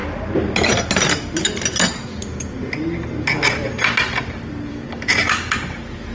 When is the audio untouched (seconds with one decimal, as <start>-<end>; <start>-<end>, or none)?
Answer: 0.0-4.7; 5.5-6.1